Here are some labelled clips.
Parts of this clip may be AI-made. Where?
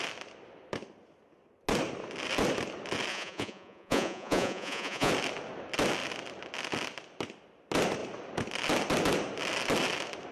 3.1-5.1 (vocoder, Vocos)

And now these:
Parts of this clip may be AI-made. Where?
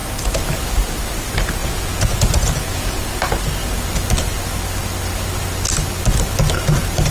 1.6-3.2 (vocoder, Vocos)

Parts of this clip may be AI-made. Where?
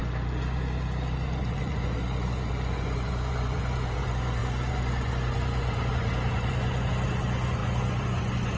1.4-8.6 (vocoder, Vocos)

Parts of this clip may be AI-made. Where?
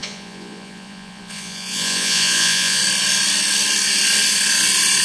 0.0-2.8 (vocoder, Vocos)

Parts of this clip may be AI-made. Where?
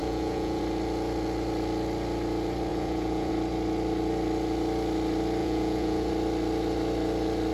0.0-0.6 (vocoder, Vocos); 2.7-3.3; 5.4-6.1